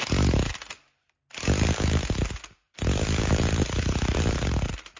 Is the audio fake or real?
real